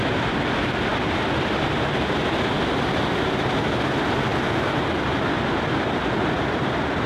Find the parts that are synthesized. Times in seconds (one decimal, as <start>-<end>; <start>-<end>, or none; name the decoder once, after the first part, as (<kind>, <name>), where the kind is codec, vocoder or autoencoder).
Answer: none